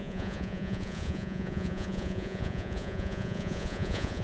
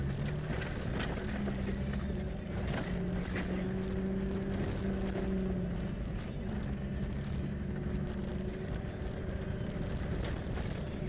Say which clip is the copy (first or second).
first